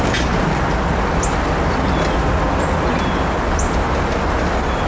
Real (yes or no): yes